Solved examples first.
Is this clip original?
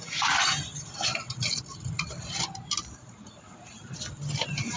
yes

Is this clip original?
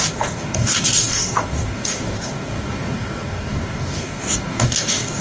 no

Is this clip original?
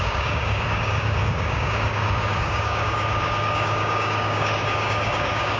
no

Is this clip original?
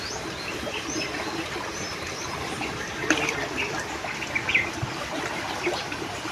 yes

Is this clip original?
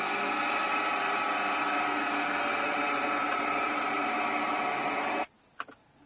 yes